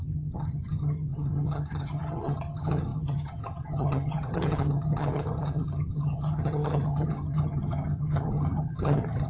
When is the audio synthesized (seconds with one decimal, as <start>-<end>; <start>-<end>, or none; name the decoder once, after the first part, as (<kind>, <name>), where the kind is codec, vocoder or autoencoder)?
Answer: 0.0-9.3 (vocoder, HiFi-GAN)